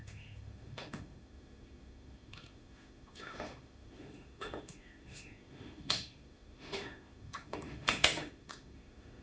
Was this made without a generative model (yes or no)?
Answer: no